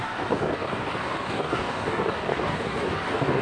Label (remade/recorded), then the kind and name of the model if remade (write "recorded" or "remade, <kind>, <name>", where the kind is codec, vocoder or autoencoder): remade, codec, DAC